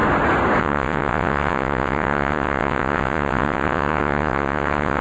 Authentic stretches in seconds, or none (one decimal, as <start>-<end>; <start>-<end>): 0.0-0.6